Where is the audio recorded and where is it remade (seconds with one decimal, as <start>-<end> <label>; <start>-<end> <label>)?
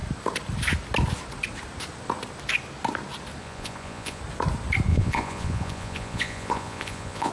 0.0-3.4 recorded; 3.4-4.2 remade; 4.2-4.9 recorded; 4.9-7.3 remade